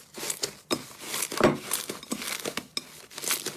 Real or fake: real